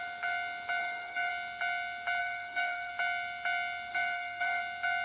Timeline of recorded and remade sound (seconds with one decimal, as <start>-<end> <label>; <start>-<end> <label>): 0.0-0.8 recorded; 0.8-1.3 remade; 1.3-2.2 recorded; 2.2-2.9 remade; 2.9-3.9 recorded; 3.9-4.6 remade; 4.6-5.0 recorded